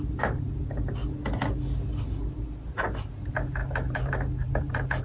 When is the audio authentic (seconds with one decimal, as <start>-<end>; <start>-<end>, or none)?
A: 1.0-3.1